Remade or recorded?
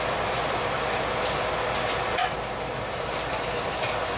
recorded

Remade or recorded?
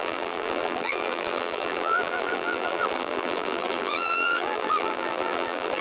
remade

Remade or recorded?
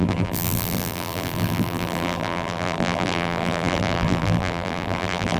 remade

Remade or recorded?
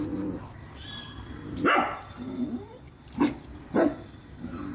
recorded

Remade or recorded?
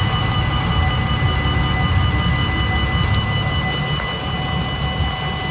recorded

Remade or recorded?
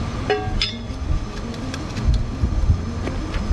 recorded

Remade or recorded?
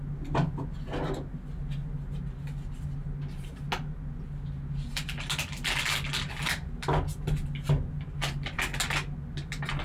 recorded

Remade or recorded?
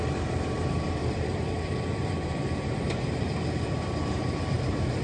remade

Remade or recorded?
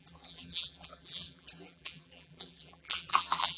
remade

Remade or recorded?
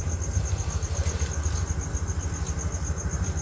recorded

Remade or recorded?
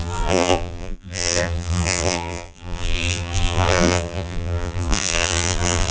remade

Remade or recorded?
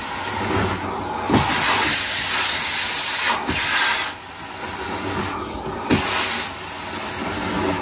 recorded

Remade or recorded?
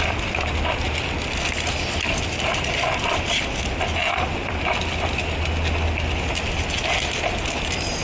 recorded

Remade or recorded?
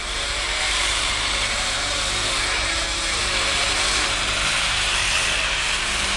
remade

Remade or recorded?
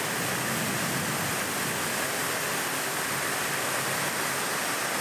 recorded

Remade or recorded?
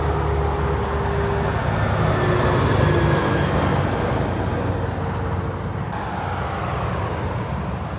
recorded